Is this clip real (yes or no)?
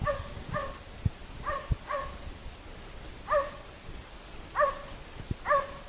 yes